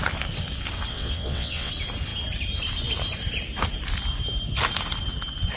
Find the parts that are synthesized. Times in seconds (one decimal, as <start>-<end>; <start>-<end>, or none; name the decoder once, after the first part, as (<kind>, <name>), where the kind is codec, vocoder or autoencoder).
0.9-1.7 (vocoder, WaveNeXt)

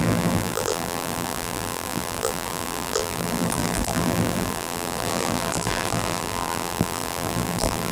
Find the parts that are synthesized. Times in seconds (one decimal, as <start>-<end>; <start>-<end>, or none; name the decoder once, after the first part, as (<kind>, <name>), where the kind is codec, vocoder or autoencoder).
0.0-7.9 (vocoder, BigVGAN v2)

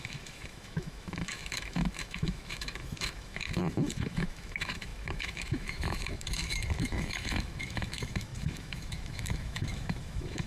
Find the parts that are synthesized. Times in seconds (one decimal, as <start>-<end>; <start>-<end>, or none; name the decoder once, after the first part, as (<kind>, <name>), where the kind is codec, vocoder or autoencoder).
0.0-10.5 (autoencoder, DAC-VAE)

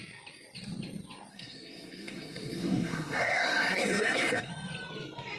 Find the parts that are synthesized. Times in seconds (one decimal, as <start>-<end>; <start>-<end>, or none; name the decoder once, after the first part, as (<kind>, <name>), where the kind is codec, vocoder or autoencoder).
1.3-4.5 (codec, SNAC)